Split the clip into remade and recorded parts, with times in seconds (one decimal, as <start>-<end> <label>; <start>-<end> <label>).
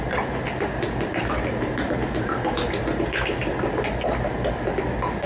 0.0-1.2 recorded; 1.2-3.4 remade; 3.4-5.3 recorded